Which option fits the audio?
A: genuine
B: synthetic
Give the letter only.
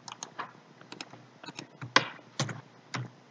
A